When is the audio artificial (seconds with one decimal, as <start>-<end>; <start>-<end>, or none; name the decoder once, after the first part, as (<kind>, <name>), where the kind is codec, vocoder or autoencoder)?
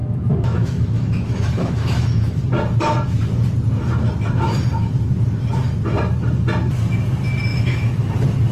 0.0-2.4 (autoencoder, DAC-VAE); 7.5-8.1